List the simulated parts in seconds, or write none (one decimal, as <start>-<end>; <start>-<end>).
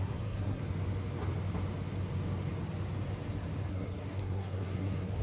0.0-0.6; 3.7-5.2